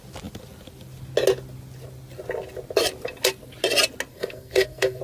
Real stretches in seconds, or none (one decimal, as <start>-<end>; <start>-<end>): 0.0-4.1